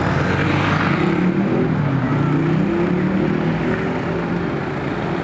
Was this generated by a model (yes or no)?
no